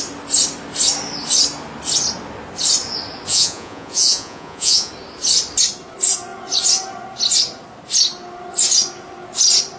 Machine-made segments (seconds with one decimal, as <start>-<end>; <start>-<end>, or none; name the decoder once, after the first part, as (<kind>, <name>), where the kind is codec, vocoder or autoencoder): 3.3-4.9 (vocoder, Vocos)